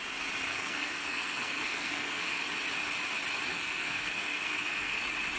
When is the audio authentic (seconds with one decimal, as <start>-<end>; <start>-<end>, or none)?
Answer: 0.0-0.5; 2.4-3.5; 5.0-5.4